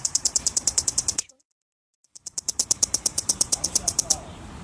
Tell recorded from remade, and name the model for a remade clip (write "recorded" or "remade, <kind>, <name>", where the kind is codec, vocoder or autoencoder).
remade, vocoder, BigVGAN v2